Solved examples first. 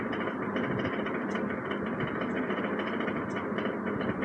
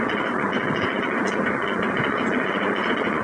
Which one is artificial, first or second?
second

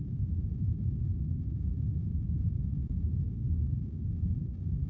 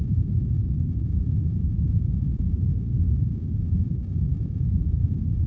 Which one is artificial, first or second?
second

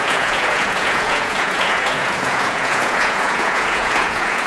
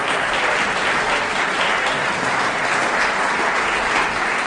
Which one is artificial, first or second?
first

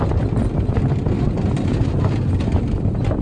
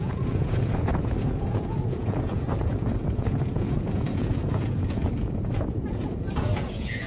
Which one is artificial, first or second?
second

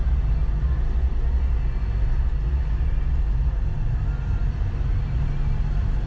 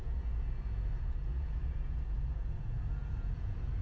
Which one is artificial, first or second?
second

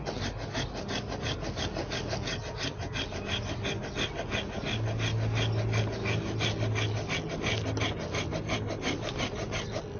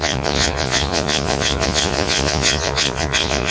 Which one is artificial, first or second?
second